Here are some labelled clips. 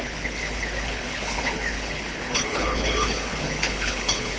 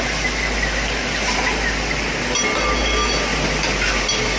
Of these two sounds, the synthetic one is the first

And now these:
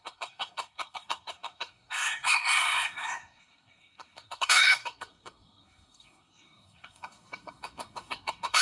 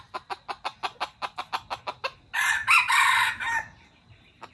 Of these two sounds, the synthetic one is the first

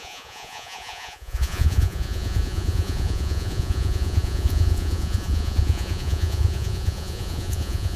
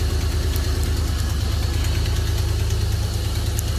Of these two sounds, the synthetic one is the first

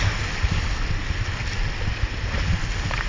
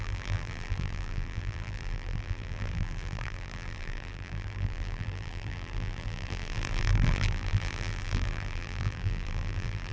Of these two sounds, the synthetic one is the second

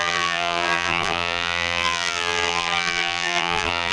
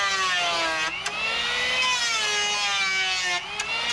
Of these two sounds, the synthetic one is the first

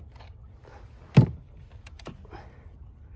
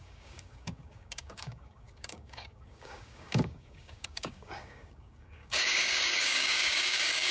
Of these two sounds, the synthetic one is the second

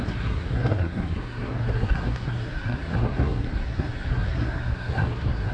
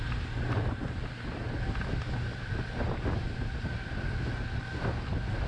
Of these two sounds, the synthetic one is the first